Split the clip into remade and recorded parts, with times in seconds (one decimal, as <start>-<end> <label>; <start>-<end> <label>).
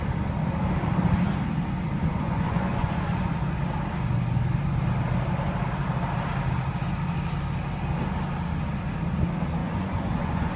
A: 0.0-2.1 recorded; 2.1-3.3 remade; 3.3-9.6 recorded; 9.6-10.6 remade